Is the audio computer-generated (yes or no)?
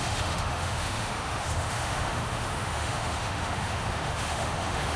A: yes